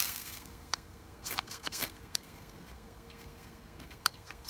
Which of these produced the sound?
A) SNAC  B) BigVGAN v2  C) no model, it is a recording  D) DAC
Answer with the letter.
A